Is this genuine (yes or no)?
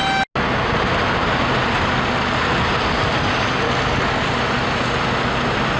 yes